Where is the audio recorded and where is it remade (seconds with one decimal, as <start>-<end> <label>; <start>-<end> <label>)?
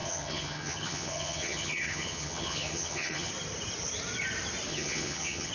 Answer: 0.0-3.3 remade; 3.3-4.7 recorded; 4.7-5.5 remade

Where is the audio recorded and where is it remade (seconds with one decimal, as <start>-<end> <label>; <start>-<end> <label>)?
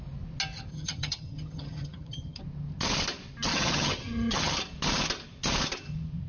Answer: 0.0-0.7 recorded; 0.7-2.4 remade; 2.4-3.5 recorded; 3.5-4.6 remade; 4.6-6.3 recorded